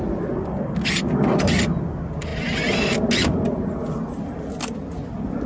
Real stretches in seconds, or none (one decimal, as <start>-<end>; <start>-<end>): 0.0-5.5